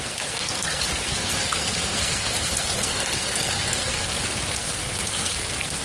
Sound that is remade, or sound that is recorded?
remade